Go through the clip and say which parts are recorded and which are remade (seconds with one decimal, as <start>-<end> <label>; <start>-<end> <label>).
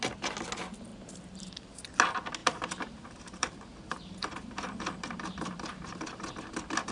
0.0-0.9 recorded; 0.9-1.7 remade; 1.7-2.4 recorded; 2.4-6.3 remade; 6.3-6.9 recorded